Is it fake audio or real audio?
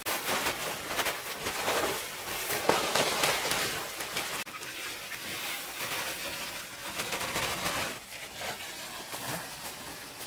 real